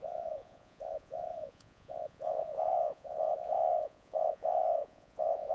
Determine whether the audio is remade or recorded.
remade